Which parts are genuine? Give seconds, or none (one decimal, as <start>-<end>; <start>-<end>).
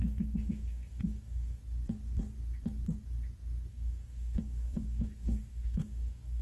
1.6-3.7